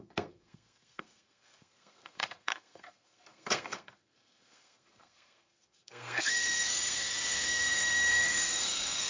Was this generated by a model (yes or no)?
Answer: yes